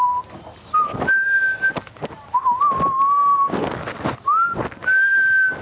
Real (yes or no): yes